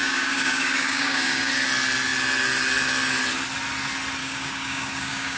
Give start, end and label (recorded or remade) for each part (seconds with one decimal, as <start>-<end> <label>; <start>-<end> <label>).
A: 0.0-1.5 remade; 1.5-4.2 recorded; 4.2-5.4 remade